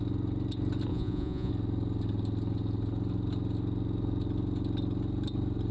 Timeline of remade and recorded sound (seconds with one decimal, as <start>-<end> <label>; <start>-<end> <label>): 0.0-0.9 recorded; 0.9-1.5 remade; 1.5-5.7 recorded